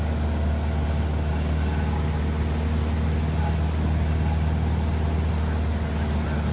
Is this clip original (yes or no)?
yes